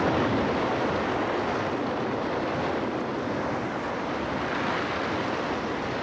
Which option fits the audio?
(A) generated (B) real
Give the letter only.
B